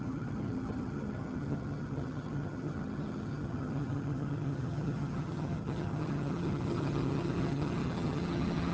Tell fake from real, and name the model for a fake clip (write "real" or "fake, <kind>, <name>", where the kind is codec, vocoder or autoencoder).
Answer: fake, vocoder, HiFi-GAN